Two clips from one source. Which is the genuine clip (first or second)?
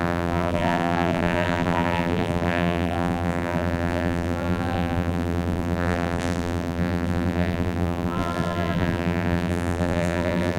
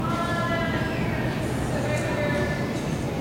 second